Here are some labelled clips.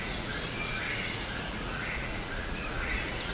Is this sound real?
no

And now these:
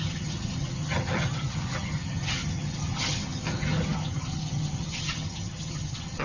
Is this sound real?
no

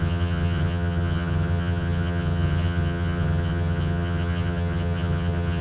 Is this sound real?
no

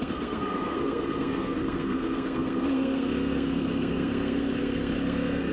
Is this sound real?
no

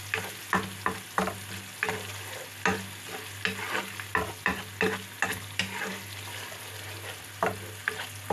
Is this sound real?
yes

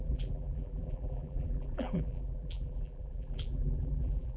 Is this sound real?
no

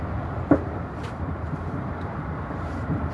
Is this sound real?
no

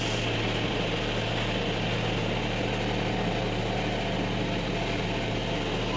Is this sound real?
yes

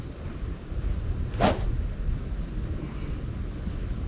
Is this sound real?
yes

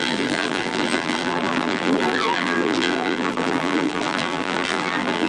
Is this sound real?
no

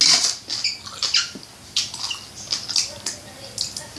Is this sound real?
yes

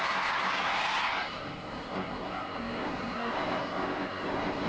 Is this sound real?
no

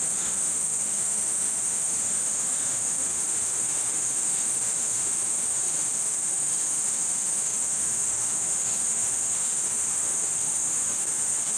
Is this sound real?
no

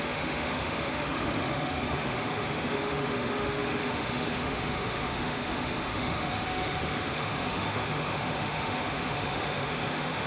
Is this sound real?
no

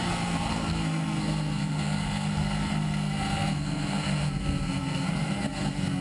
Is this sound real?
no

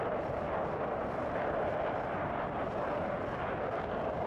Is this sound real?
yes